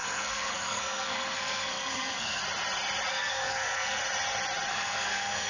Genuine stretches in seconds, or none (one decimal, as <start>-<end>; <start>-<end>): 2.4-3.1; 4.0-4.7